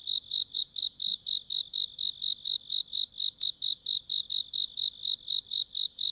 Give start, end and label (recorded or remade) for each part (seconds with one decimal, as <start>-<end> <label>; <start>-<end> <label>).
0.0-6.1 recorded